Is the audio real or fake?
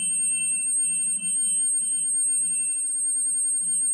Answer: real